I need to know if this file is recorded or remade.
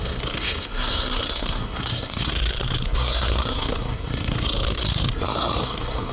remade